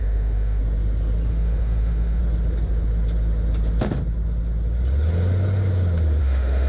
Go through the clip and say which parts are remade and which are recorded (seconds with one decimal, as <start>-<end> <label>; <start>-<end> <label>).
0.0-0.6 remade; 0.6-1.3 recorded; 1.3-2.2 remade; 2.2-6.2 recorded; 6.2-6.7 remade